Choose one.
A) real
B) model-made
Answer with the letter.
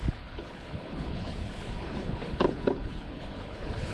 B